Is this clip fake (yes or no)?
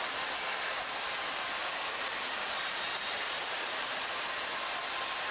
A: no